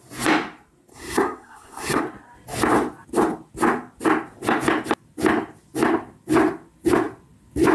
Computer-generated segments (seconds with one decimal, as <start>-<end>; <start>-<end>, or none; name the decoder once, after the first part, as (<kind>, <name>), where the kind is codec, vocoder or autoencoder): 0.9-2.0 (codec, SNAC)